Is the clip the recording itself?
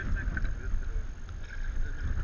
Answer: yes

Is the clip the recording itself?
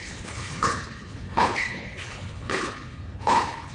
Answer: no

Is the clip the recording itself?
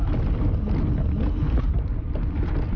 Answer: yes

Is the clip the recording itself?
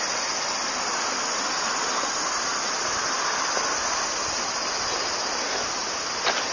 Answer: yes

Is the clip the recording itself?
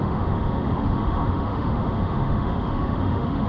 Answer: no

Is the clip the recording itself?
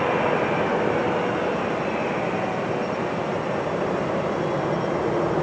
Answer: yes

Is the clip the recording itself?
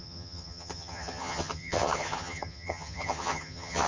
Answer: no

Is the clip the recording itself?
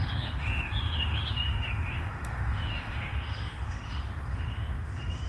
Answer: no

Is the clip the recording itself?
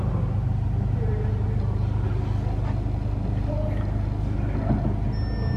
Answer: yes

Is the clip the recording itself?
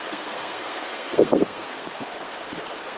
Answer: no